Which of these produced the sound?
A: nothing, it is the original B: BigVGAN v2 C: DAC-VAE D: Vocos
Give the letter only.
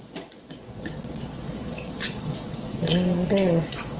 D